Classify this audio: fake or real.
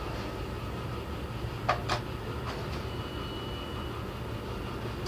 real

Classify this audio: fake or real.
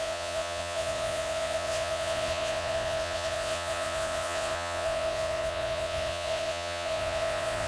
fake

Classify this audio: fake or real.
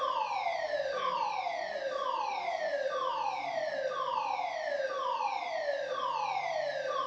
real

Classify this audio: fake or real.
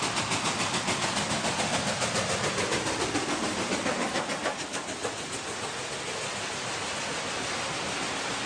real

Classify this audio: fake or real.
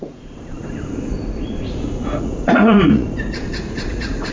fake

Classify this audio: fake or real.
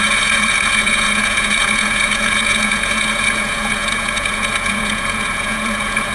fake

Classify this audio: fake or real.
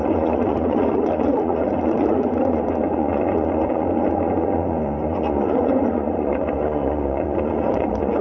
fake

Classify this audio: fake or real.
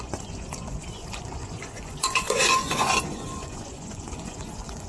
fake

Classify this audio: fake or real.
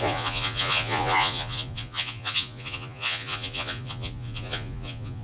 fake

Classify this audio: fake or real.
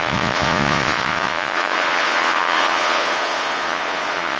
fake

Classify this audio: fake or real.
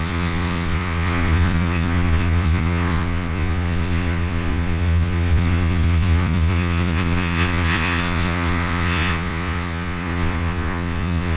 fake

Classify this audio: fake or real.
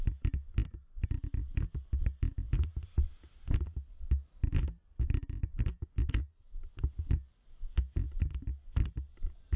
real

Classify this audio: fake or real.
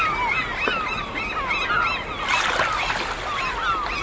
real